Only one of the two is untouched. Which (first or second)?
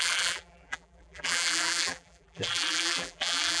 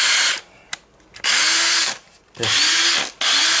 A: second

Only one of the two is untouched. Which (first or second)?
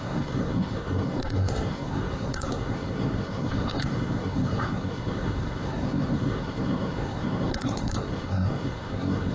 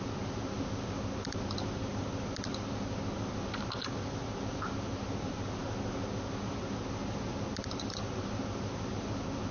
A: second